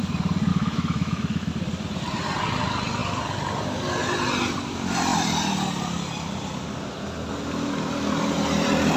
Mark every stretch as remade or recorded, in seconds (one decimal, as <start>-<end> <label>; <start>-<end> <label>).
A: 0.0-0.5 recorded; 0.5-1.5 remade; 1.5-9.0 recorded